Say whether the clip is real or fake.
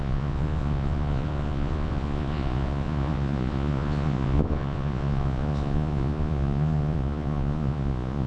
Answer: fake